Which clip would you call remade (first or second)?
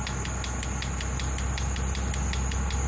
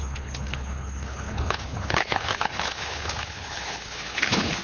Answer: second